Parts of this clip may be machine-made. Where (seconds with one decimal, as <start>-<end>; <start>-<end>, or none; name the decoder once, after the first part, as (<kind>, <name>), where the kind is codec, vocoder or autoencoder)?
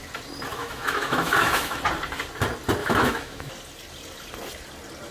0.5-1.8 (autoencoder, DAC-VAE); 2.8-3.5